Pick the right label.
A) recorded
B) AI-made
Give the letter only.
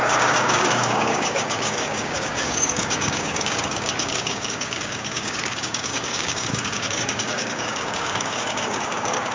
B